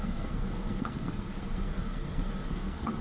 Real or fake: fake